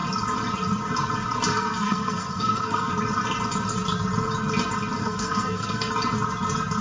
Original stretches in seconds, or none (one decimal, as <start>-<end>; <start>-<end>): 0.0-1.5; 2.9-5.0; 5.9-6.8